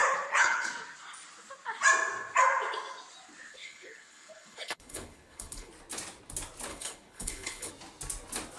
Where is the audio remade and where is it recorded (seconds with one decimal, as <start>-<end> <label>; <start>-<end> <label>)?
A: 0.0-0.7 remade; 0.7-3.5 recorded; 3.5-5.7 remade; 5.7-6.7 recorded; 6.7-7.7 remade; 7.7-8.6 recorded